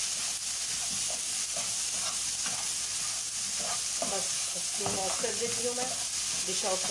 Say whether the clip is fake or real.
real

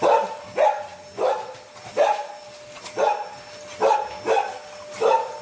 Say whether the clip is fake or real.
real